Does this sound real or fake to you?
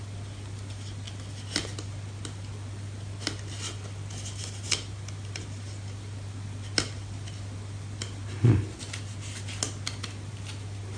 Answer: real